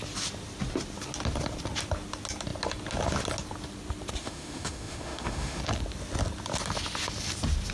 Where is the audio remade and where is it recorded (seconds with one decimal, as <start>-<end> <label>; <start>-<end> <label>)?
0.0-4.2 recorded; 4.2-5.6 remade; 5.6-7.7 recorded